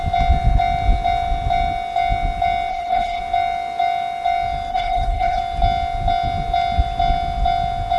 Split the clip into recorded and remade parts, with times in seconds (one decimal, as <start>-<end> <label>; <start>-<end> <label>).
0.0-2.7 recorded; 2.7-3.2 remade; 3.2-4.7 recorded; 4.7-5.4 remade; 5.4-8.0 recorded